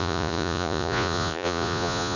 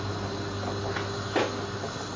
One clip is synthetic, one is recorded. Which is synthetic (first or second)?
first